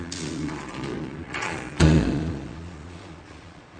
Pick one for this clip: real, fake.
fake